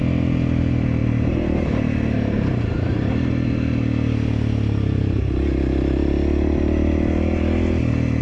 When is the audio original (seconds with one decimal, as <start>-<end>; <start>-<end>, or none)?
0.0-1.0; 3.1-8.2